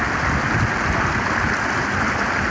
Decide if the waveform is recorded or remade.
recorded